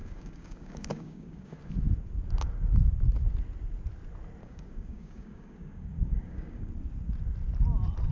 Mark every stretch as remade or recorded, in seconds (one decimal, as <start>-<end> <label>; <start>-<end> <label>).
0.0-1.7 remade; 1.7-4.4 recorded; 4.4-6.7 remade; 6.7-8.1 recorded